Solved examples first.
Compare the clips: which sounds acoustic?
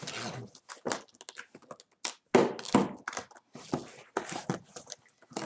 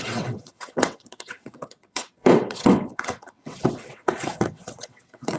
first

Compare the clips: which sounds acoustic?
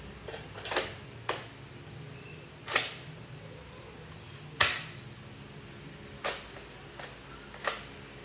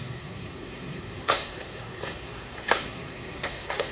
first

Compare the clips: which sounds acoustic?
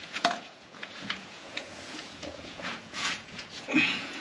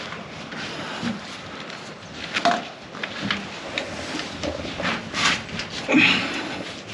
second